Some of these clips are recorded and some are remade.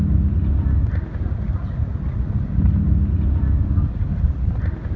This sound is recorded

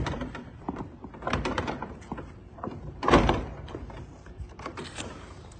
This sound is remade